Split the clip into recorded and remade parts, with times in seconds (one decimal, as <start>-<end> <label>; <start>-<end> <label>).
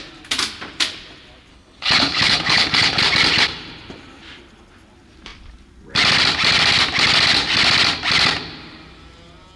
0.0-1.5 recorded; 1.5-3.0 remade; 3.0-9.6 recorded